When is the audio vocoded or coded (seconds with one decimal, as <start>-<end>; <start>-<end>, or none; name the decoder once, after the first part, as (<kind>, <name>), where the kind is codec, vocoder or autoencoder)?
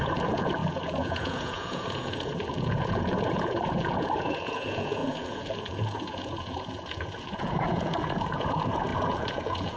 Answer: 0.0-9.8 (vocoder, Vocos)